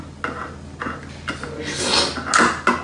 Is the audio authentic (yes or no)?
yes